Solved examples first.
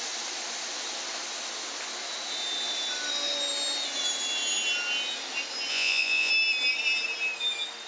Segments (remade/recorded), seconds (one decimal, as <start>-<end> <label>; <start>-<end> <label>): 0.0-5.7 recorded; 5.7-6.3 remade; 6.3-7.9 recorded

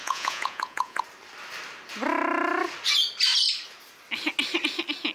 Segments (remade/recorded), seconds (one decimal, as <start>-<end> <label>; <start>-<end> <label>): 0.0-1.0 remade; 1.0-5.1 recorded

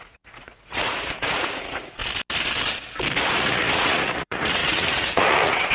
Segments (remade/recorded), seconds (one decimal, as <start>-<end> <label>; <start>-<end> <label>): 0.0-2.0 remade; 2.0-3.3 recorded; 3.3-5.7 remade

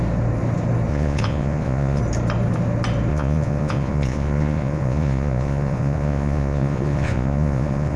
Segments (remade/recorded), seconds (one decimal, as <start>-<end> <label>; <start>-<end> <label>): 0.0-0.9 recorded; 0.9-2.0 remade; 2.0-3.1 recorded; 3.1-8.0 remade

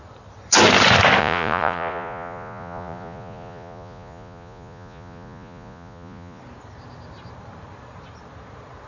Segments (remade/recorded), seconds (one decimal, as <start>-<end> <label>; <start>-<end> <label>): 0.0-1.2 recorded; 1.2-6.4 remade; 6.4-8.9 recorded